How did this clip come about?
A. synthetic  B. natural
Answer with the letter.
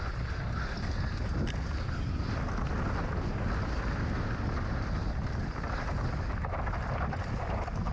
B